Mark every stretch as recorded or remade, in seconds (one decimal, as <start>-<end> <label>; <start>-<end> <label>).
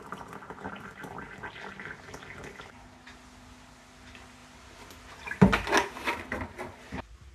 0.0-7.3 recorded